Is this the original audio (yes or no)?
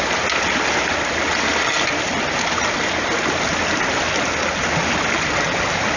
yes